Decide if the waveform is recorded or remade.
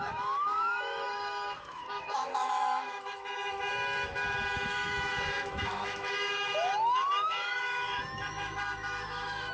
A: remade